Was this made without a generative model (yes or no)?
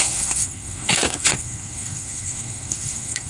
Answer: no